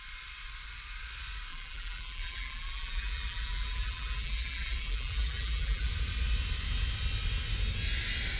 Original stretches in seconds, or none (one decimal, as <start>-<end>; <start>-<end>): 0.0-1.5; 5.9-8.4

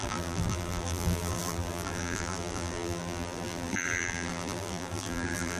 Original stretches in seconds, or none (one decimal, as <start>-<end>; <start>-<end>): none

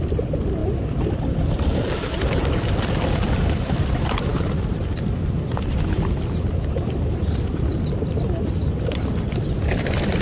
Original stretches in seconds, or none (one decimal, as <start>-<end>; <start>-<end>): 0.6-1.1; 7.7-8.6

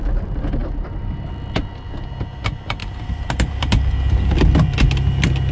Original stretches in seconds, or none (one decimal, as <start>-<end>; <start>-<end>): 0.0-2.8; 4.3-5.5

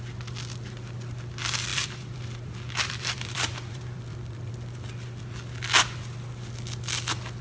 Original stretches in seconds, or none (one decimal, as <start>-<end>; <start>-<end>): 0.0-1.7; 4.5-7.4

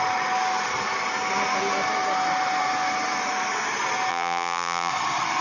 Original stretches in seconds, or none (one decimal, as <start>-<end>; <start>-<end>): 0.0-4.1; 4.9-5.4

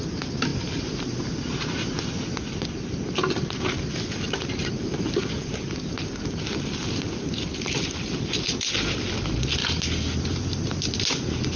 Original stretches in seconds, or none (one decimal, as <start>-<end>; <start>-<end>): 0.0-4.6; 5.4-11.6